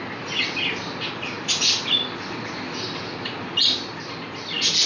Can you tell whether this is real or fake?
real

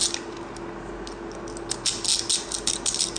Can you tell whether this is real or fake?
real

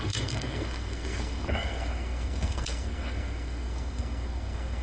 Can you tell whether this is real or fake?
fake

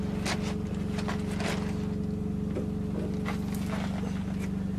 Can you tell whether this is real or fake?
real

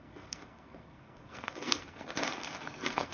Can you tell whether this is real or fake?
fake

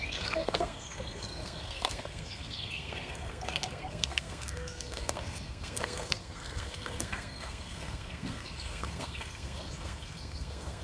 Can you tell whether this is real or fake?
fake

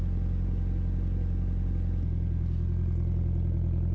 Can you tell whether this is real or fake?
real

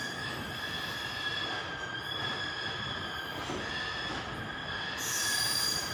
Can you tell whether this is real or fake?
real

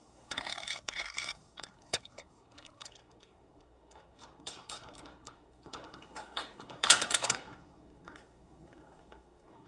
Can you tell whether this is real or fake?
fake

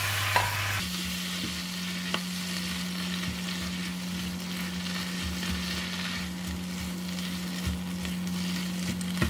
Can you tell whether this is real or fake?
real